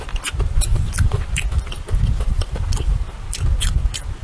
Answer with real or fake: real